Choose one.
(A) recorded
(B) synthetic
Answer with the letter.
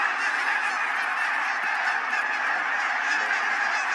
A